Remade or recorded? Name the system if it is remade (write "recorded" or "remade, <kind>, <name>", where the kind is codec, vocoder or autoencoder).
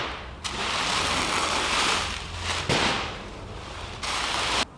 recorded